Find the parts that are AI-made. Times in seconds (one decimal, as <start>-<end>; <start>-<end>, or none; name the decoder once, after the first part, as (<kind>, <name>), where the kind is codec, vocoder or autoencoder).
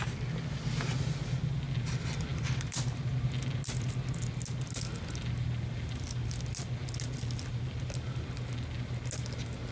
none